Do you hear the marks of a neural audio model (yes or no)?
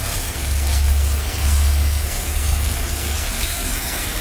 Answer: yes